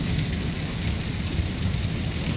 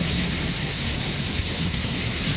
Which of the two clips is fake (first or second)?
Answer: second